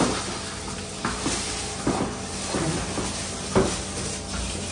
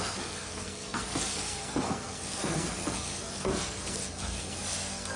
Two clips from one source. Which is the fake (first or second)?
second